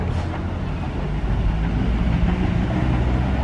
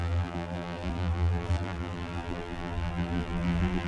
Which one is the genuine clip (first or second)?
first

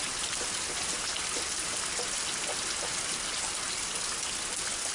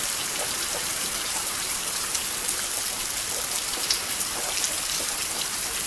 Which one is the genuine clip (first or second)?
first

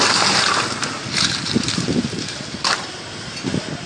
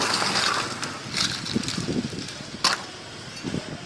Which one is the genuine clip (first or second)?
second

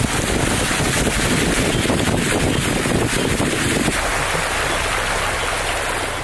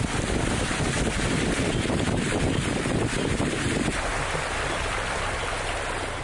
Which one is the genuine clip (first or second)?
first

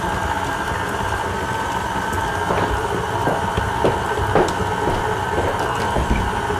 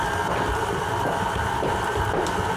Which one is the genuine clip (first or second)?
first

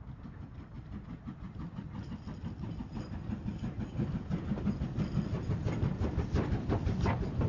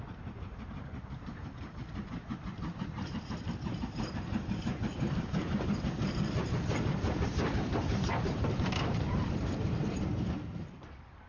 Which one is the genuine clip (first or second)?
first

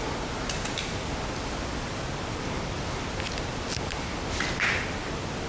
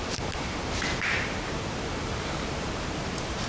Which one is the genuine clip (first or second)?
first